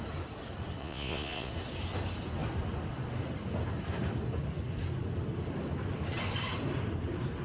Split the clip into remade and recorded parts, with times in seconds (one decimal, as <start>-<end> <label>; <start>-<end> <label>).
0.0-0.8 recorded; 0.8-1.5 remade; 1.5-7.4 recorded